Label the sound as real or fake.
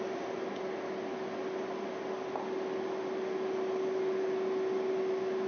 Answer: real